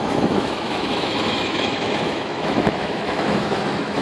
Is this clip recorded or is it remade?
remade